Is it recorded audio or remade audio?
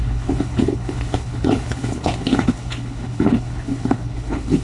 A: remade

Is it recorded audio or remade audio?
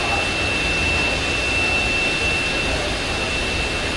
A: recorded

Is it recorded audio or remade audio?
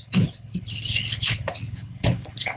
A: remade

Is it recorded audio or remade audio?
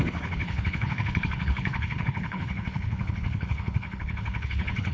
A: remade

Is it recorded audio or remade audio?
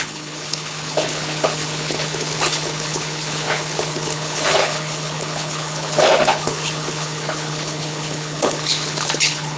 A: remade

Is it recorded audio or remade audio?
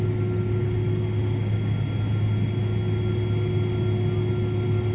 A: recorded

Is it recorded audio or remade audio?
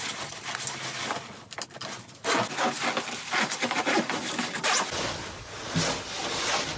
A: recorded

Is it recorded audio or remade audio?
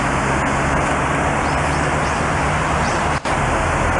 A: recorded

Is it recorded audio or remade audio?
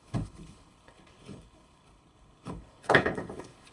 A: remade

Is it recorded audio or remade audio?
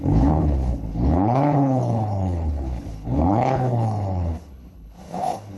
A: remade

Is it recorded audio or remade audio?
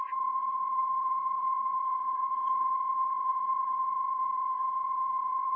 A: remade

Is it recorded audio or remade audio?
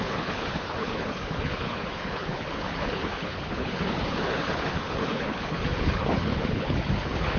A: remade